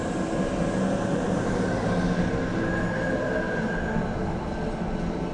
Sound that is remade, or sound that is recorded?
recorded